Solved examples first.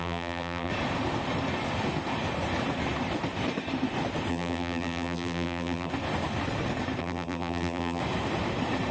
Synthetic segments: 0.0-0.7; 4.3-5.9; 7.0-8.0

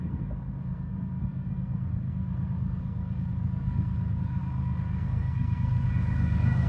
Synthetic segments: 0.0-6.7